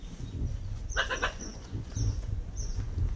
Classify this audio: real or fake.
fake